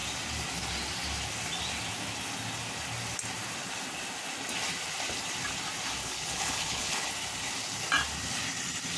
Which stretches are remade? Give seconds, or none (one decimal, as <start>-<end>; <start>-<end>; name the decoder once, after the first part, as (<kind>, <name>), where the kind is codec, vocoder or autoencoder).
6.0-7.1 (codec, HILCodec)